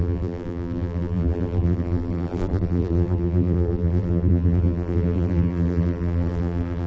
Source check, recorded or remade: remade